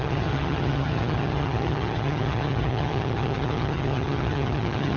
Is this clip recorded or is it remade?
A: remade